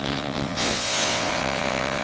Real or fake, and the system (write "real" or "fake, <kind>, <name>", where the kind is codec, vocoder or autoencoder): fake, vocoder, WaveNeXt